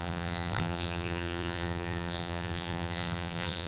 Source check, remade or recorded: remade